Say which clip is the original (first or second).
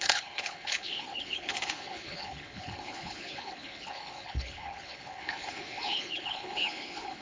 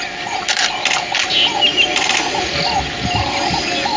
second